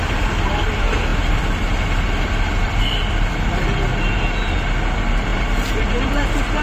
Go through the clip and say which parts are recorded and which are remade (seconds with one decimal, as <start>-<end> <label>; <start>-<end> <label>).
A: 0.0-6.6 recorded